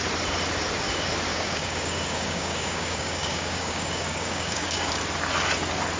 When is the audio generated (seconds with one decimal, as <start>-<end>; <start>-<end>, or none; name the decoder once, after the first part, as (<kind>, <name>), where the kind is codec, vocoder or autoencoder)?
1.3-4.9 (codec, DAC)